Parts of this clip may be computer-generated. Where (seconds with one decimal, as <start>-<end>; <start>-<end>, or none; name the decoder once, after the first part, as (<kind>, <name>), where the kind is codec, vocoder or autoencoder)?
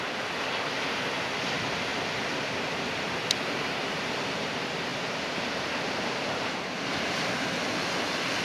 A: 1.9-4.1 (vocoder, BigVGAN v2)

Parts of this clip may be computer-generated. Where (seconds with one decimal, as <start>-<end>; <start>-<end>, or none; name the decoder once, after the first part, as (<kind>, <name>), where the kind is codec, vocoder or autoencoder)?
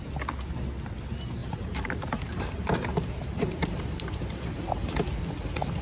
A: 1.4-4.9 (vocoder, BigVGAN v2)